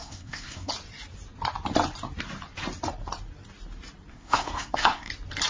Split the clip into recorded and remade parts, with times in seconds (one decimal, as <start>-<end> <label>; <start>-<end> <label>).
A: 0.0-0.7 remade; 0.7-4.1 recorded; 4.1-5.1 remade; 5.1-5.5 recorded